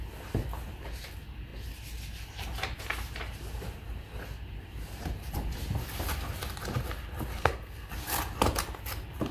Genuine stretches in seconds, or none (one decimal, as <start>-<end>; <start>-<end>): 0.0-7.4; 7.9-9.3